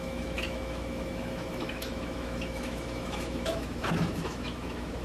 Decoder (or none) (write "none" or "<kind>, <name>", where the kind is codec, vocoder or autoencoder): autoencoder, DAC-VAE